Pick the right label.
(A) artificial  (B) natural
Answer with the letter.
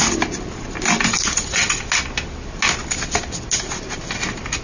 B